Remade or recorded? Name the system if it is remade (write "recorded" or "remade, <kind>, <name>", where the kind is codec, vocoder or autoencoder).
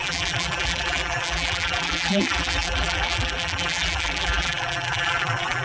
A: remade, vocoder, BigVGAN v2